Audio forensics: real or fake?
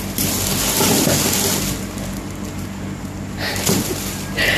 real